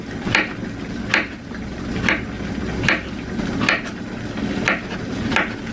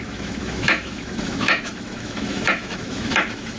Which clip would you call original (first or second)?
first